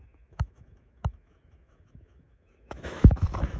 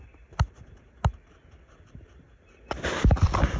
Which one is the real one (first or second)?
second